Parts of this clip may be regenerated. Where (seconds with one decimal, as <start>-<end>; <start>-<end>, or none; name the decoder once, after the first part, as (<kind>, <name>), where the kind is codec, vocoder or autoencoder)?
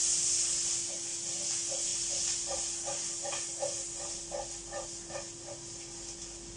none